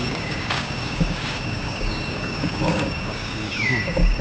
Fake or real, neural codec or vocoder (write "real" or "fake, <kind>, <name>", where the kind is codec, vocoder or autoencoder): fake, codec, DAC